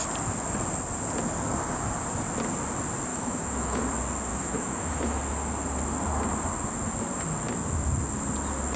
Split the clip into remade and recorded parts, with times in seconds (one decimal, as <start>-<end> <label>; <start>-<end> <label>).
0.0-3.1 recorded; 3.1-3.8 remade; 3.8-4.3 recorded; 4.3-5.2 remade; 5.2-8.8 recorded